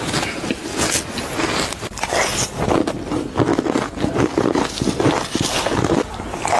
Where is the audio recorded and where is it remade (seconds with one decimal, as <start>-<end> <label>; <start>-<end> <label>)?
0.0-6.6 recorded